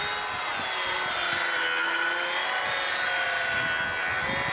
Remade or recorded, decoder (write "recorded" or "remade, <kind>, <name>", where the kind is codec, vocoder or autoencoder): recorded